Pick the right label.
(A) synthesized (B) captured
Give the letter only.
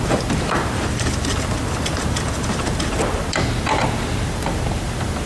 A